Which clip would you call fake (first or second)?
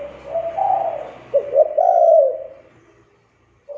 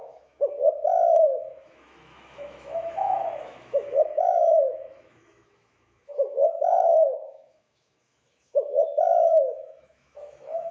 second